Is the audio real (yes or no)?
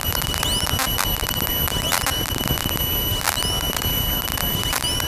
no